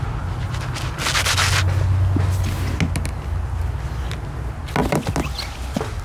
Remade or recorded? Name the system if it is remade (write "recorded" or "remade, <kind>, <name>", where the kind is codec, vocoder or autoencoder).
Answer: recorded